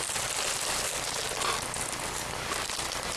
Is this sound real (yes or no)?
yes